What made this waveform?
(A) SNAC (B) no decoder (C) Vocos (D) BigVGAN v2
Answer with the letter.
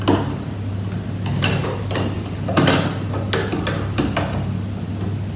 B